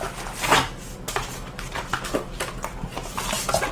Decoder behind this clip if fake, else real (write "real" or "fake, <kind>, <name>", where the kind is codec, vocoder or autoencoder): real